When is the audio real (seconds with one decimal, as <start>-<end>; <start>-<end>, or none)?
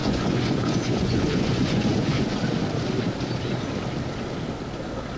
2.4-5.2